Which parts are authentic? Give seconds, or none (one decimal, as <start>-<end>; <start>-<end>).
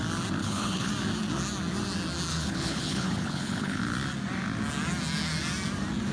0.0-0.4; 0.9-2.3; 3.8-6.1